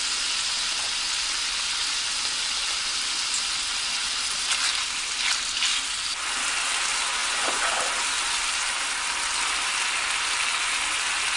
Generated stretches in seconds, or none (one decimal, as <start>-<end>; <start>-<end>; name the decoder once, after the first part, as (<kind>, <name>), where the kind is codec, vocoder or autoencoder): 7.2-7.8 (vocoder, Vocos)